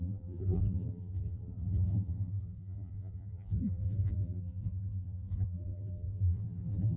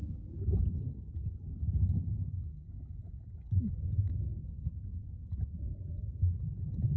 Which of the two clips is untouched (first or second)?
second